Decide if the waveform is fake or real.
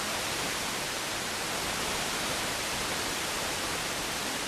real